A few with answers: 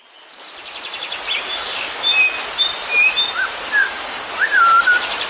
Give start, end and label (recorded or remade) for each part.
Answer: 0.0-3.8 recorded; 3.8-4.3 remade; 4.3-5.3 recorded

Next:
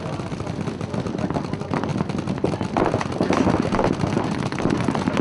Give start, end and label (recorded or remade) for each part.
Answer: 0.0-5.2 recorded

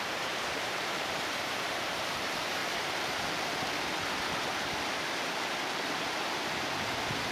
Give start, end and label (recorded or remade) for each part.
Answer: 0.0-2.6 remade; 2.6-7.3 recorded